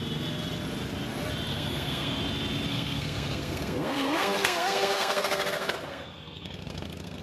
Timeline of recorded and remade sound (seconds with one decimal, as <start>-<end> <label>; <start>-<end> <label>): 0.0-1.5 recorded; 1.5-2.2 remade; 2.2-2.7 recorded; 2.7-7.2 remade